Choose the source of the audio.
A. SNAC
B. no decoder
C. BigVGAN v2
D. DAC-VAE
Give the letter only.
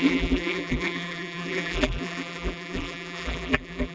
C